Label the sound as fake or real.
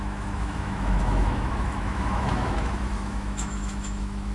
fake